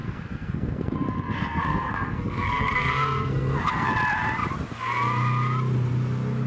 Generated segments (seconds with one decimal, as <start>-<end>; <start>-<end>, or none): 0.0-3.9